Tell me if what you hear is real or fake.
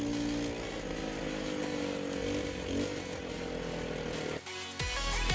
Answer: real